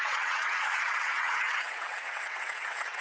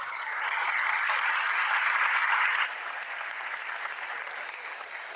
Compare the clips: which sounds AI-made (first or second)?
first